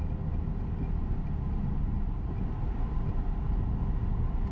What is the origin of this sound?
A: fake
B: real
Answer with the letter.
B